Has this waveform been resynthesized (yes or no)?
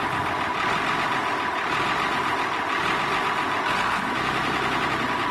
yes